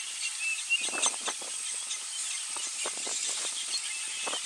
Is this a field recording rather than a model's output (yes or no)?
yes